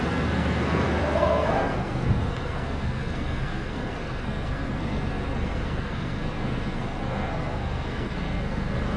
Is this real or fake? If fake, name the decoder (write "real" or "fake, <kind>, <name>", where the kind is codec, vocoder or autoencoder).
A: fake, codec, SNAC